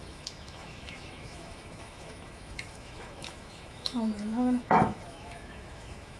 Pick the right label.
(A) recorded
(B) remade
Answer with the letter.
B